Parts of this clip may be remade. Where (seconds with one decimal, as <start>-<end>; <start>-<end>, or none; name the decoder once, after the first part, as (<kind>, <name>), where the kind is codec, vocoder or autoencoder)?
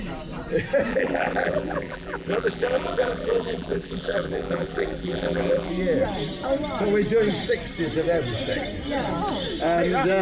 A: 0.9-5.7 (vocoder, BigVGAN v2)